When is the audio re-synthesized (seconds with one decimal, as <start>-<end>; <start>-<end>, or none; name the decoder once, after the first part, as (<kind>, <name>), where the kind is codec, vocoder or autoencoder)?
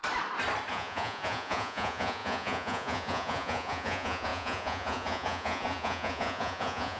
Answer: 0.7-7.0 (vocoder, Vocos)